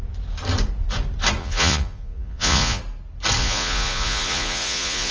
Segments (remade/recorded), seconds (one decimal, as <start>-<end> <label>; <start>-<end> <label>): 0.0-1.4 recorded; 1.4-2.8 remade; 2.8-3.4 recorded; 3.4-5.1 remade